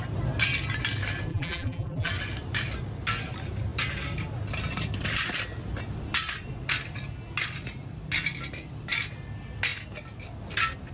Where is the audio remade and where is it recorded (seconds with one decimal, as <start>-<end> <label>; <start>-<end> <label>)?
0.0-1.3 recorded; 1.3-2.1 remade; 2.1-10.9 recorded